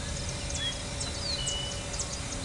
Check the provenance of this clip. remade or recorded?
recorded